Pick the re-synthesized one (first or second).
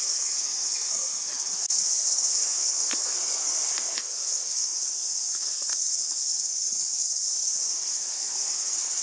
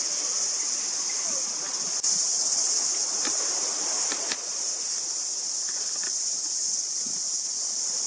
first